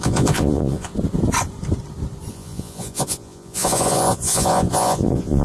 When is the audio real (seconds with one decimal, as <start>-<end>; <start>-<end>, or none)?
0.9-2.3